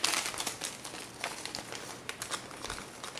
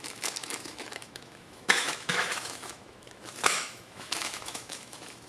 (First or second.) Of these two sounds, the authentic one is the first